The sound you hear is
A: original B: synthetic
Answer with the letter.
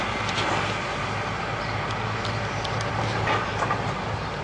A